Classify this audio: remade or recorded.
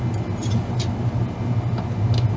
recorded